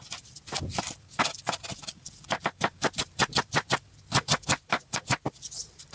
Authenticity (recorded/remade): remade